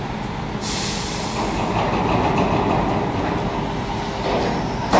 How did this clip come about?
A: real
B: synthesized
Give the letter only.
A